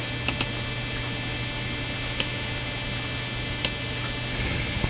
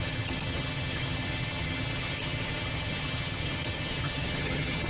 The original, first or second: first